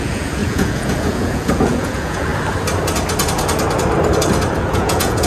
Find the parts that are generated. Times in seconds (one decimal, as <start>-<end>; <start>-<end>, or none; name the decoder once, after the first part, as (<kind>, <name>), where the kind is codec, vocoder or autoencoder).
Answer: 0.0-2.3 (vocoder, Vocos); 4.6-5.3

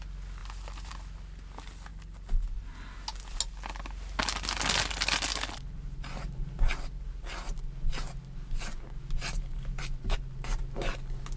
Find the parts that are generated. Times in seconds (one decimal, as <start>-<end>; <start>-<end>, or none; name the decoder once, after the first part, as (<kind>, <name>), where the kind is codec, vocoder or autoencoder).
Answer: none

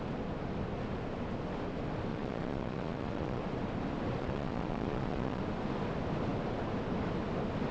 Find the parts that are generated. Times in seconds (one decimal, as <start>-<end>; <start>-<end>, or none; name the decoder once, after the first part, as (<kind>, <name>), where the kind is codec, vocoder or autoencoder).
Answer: 2.1-3.4 (vocoder, Vocos); 4.2-5.4

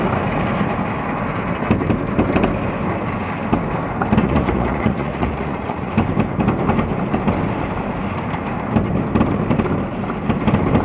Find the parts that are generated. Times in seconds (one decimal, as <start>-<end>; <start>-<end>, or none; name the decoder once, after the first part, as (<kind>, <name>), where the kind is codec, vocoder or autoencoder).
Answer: 4.2-5.9 (vocoder, Vocos)